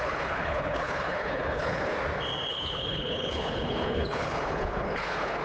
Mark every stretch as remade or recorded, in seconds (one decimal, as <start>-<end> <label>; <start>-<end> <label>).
0.0-1.9 remade; 1.9-2.5 recorded; 2.5-5.4 remade